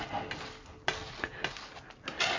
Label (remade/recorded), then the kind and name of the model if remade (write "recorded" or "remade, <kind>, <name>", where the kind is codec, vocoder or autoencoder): recorded